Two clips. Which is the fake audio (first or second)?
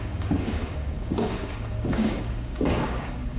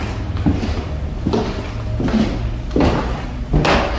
first